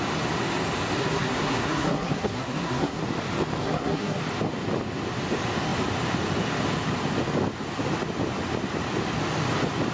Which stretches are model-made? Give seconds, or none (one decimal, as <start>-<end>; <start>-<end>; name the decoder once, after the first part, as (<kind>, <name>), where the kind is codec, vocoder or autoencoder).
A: 1.0-3.0 (codec, SNAC); 3.6-4.2